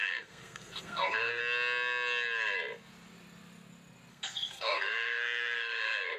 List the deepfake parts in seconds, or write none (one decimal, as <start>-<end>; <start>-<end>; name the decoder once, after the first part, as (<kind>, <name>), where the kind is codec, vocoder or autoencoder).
0.0-1.4 (codec, SNAC); 4.1-6.2